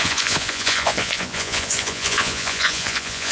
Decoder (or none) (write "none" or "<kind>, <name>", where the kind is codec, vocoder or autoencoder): vocoder, Vocos